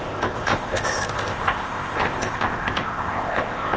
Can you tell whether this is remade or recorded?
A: remade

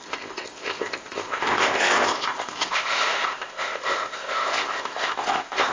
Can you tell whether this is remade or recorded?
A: remade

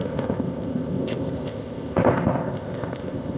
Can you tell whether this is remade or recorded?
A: remade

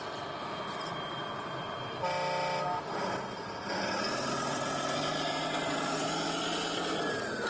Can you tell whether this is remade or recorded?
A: recorded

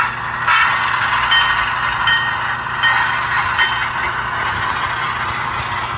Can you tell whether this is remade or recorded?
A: recorded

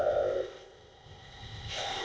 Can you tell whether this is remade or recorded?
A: remade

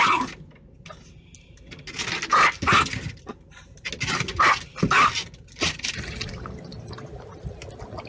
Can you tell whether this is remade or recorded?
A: recorded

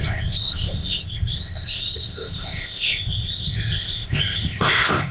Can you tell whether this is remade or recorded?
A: remade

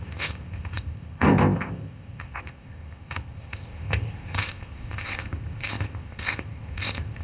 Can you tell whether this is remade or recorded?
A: remade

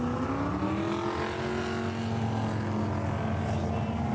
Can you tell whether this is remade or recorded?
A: recorded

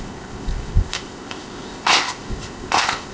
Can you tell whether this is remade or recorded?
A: remade